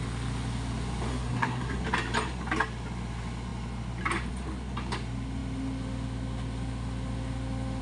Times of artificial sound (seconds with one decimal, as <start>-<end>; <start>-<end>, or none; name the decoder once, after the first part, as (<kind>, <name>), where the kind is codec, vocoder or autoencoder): 1.1-1.8 (codec, SNAC)